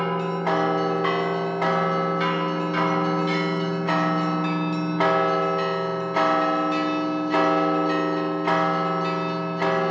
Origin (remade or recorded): recorded